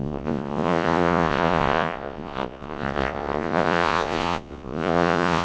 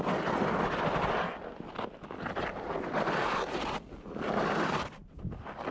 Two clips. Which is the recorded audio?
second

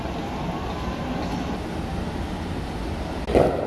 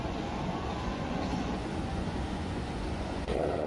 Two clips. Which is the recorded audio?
first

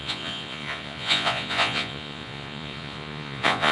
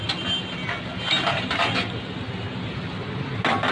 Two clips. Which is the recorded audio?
second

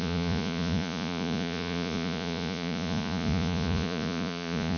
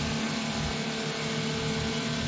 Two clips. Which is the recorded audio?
second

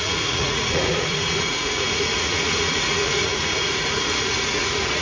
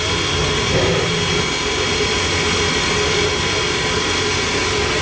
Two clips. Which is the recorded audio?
second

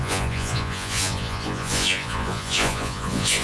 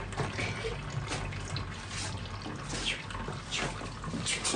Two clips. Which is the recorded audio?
second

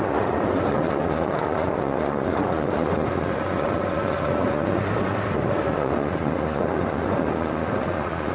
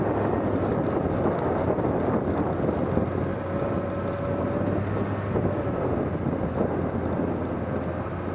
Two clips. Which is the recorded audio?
second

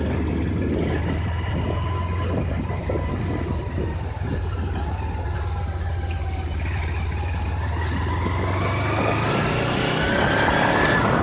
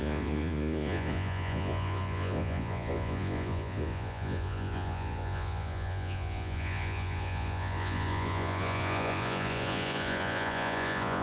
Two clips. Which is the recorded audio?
first